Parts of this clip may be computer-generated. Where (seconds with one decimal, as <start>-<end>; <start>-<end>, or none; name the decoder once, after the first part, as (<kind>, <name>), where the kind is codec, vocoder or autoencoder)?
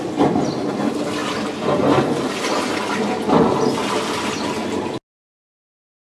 none